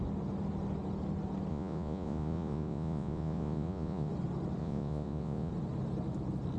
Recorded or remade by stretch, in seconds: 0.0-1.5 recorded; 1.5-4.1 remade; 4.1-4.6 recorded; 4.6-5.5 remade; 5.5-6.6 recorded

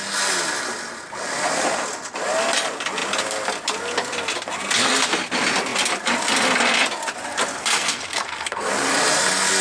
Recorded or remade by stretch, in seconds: 0.0-7.5 recorded; 7.5-8.7 remade; 8.7-9.6 recorded

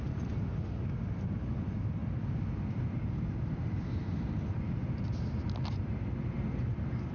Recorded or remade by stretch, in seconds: 0.0-7.1 recorded

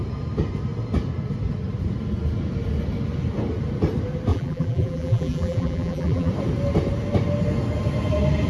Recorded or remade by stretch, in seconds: 0.0-4.3 recorded; 4.3-6.3 remade; 6.3-8.5 recorded

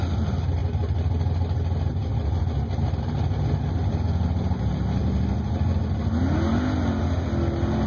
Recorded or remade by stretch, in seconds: 0.0-7.9 recorded

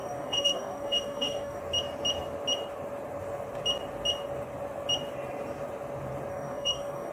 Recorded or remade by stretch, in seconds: 0.0-1.6 remade; 1.6-6.3 recorded; 6.3-7.1 remade

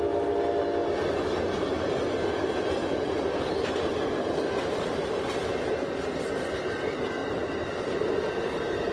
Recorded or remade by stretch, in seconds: 0.0-8.9 recorded

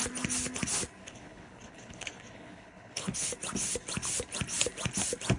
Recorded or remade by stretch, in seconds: 0.0-1.0 recorded; 1.0-3.3 remade; 3.3-5.4 recorded